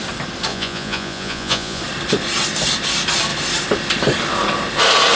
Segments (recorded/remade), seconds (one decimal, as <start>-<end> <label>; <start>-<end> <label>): 0.0-0.5 recorded; 0.5-1.8 remade; 1.8-5.2 recorded